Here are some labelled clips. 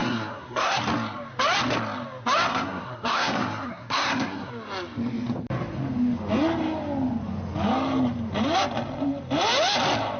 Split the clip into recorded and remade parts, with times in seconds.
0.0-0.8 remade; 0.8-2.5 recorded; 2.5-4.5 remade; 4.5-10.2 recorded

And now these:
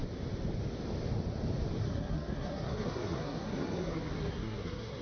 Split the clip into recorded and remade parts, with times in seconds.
0.0-1.8 recorded; 1.8-5.0 remade

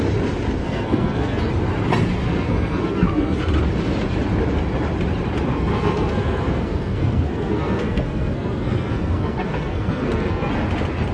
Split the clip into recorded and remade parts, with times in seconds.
0.0-0.6 recorded; 0.6-1.5 remade; 1.5-2.2 recorded; 2.2-3.4 remade; 3.4-5.5 recorded; 5.5-10.5 remade; 10.5-11.1 recorded

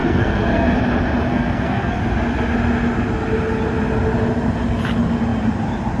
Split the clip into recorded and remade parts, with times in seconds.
0.0-0.8 remade; 0.8-1.3 recorded; 1.3-2.0 remade; 2.0-6.0 recorded

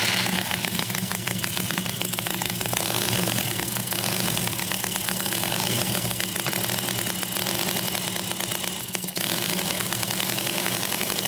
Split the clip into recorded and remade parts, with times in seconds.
0.0-6.3 remade; 6.3-8.8 recorded; 8.8-11.3 remade

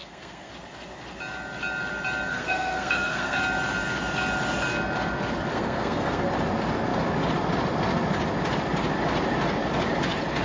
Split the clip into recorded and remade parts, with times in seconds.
0.0-0.5 remade; 0.5-2.3 recorded; 2.3-3.4 remade; 3.4-5.5 recorded; 5.5-6.3 remade; 6.3-10.4 recorded